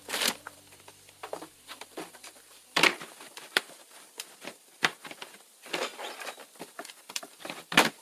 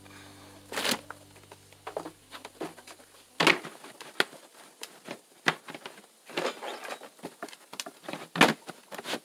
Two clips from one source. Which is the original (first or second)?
second